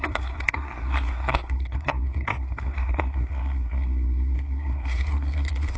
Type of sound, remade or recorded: remade